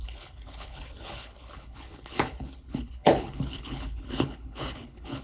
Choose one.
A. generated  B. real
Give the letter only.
A